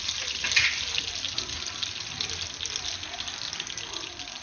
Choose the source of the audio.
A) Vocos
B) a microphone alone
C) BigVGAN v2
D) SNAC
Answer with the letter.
B